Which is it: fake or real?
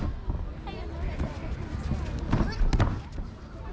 real